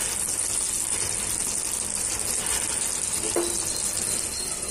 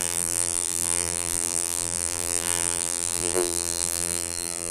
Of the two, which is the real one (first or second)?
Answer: first